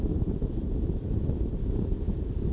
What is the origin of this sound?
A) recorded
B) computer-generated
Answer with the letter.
A